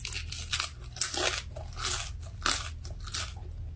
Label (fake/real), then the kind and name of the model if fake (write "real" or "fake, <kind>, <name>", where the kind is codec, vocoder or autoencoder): real